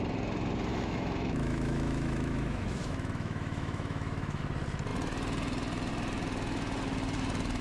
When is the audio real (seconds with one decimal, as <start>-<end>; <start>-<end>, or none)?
0.0-0.7; 4.4-7.6